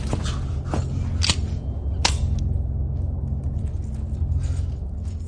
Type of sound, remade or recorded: recorded